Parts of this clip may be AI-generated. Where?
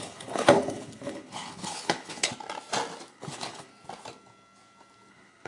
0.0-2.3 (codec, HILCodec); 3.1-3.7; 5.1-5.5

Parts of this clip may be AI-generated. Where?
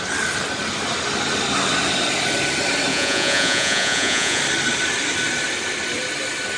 2.9-4.4 (vocoder, Vocos)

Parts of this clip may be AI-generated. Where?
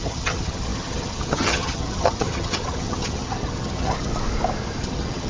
0.0-4.1 (vocoder, HiFi-GAN); 4.8-5.3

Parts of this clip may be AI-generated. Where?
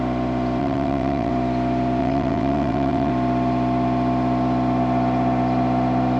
0.6-1.3 (vocoder, WaveNeXt); 2.0-3.1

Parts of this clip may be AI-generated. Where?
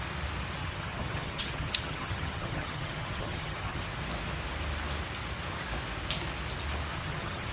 0.6-3.8 (vocoder, HiFi-GAN); 6.9-7.5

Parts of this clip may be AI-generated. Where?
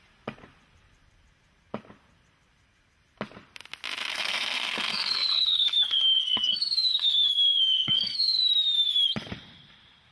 4.1-8.4 (codec, SNAC)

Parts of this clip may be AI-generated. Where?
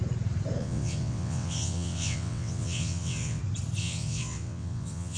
0.6-3.4 (vocoder, WaveNeXt); 3.8-5.2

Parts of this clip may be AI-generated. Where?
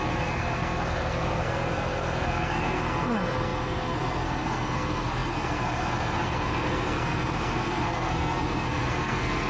0.0-9.5 (codec, SNAC)